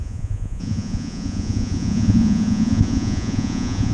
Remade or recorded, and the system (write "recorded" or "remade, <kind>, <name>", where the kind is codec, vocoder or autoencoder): remade, vocoder, Vocos